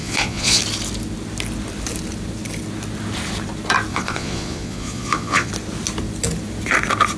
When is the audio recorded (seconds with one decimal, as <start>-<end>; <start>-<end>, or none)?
0.6-3.9; 5.5-7.2